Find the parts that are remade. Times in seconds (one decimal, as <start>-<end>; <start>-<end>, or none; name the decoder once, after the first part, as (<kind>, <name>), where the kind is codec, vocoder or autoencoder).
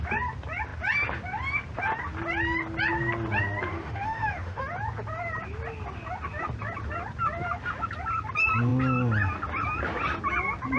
3.7-4.6 (autoencoder, DAC-VAE)